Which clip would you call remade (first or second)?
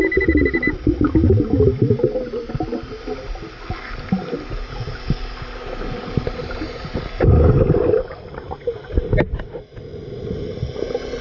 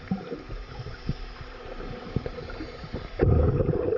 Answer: second